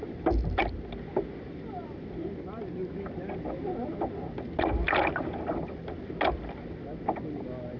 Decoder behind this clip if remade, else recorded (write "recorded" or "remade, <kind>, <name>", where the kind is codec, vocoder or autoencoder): recorded